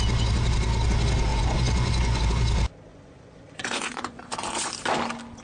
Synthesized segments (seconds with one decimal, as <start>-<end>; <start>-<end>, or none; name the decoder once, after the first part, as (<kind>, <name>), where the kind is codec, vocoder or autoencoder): 1.3-2.2 (vocoder, Vocos); 2.9-4.7

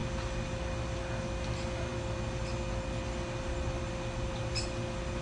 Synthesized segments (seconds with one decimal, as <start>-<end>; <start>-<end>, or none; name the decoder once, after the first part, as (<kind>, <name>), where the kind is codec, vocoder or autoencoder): none

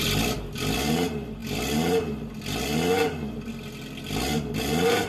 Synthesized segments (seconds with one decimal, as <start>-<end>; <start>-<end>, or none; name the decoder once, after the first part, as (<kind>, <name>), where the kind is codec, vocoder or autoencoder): none

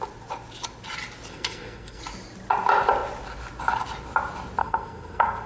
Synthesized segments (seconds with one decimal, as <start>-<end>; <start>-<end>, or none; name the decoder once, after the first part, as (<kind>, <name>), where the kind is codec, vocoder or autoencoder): 1.3-2.0 (codec, SNAC); 4.6-5.5

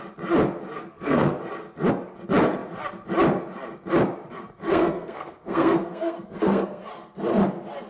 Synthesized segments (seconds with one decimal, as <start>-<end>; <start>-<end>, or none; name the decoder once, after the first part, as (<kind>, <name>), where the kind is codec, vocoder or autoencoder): 0.8-1.4 (codec, SNAC); 4.7-6.9

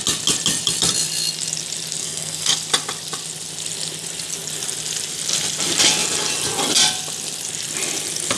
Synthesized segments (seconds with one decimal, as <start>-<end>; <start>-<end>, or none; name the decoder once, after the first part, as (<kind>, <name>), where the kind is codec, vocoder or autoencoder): 2.0-2.5 (codec, SNAC)